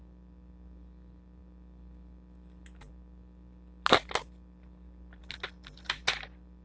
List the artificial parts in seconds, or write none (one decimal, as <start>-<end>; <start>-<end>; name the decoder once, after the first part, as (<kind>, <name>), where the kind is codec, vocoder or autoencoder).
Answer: none